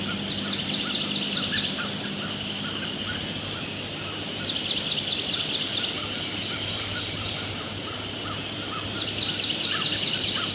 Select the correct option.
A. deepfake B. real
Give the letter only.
B